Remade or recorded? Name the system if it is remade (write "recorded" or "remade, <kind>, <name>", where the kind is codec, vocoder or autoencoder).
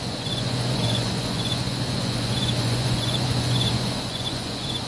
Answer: remade, vocoder, Vocos